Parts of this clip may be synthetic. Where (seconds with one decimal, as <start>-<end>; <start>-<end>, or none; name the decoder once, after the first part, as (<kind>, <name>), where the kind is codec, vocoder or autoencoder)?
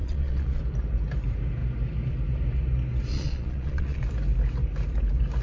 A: 0.0-0.6 (vocoder, Vocos); 3.1-4.0